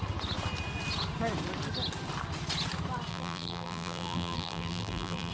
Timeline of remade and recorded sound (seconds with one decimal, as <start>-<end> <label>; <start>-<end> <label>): 0.0-3.1 recorded; 3.1-5.3 remade